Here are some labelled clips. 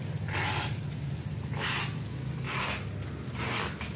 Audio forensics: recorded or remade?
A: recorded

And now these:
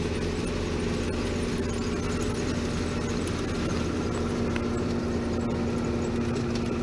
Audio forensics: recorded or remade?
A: recorded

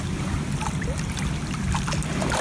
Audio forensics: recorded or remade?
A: recorded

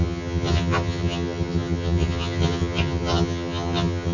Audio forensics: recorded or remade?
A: remade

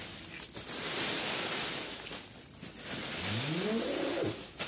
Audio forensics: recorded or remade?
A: recorded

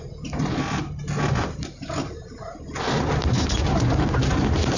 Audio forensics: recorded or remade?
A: recorded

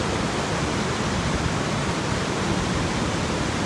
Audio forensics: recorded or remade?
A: recorded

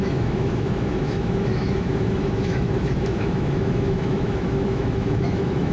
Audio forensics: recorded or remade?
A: remade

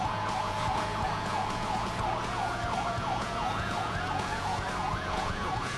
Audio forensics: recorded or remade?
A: remade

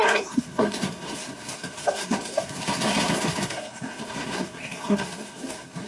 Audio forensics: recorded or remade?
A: remade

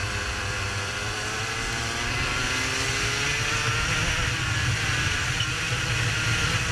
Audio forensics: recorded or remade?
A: recorded